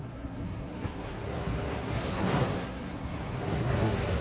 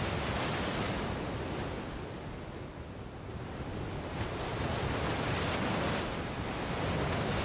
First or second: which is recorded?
second